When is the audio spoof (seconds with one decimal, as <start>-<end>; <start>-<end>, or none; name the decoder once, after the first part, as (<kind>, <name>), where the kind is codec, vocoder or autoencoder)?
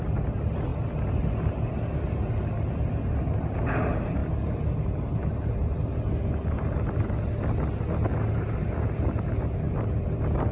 none